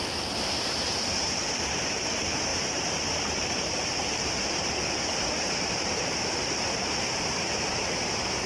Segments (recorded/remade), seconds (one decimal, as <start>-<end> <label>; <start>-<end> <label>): 0.0-1.3 recorded; 1.3-8.5 remade